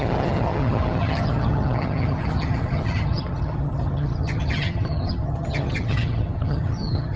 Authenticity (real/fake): fake